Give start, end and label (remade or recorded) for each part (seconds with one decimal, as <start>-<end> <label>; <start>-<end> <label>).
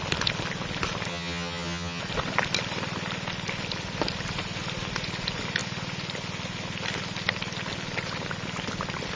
0.0-1.1 recorded; 1.1-2.0 remade; 2.0-9.2 recorded